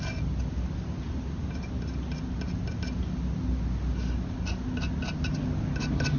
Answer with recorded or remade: recorded